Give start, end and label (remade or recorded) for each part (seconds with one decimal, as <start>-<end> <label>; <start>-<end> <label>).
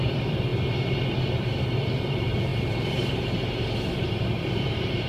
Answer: 0.0-0.5 remade; 0.5-1.0 recorded; 1.0-5.1 remade